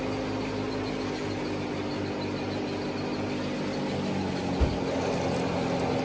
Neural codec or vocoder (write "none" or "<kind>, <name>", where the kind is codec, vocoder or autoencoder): none